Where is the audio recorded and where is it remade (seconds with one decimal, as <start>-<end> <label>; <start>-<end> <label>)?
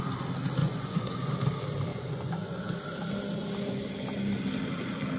0.0-0.6 recorded; 0.6-1.3 remade; 1.3-1.9 recorded; 1.9-2.6 remade; 2.6-5.2 recorded